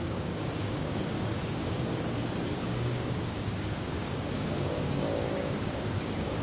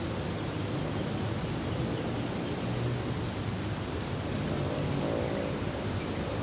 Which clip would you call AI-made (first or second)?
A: first